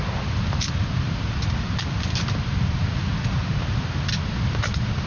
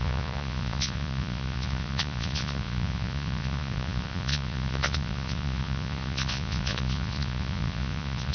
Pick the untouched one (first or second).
first